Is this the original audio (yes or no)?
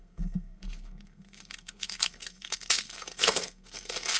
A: no